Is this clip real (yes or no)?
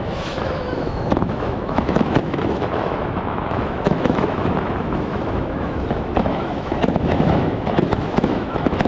no